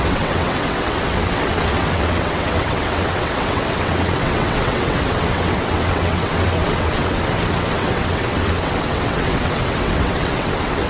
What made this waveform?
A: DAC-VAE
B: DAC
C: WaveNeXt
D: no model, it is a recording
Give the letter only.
C